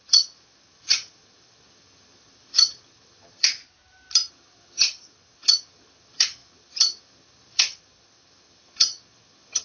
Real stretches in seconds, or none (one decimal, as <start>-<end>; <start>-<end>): 3.6-4.3